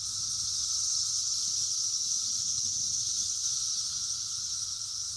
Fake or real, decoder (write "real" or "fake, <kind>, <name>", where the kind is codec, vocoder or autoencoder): real